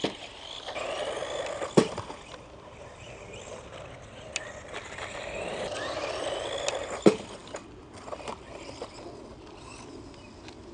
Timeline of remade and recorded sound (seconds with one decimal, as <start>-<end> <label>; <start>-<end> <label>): 0.0-10.7 recorded